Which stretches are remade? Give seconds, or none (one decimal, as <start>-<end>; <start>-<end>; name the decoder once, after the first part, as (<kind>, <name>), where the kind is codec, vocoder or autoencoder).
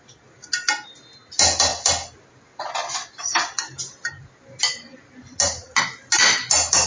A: none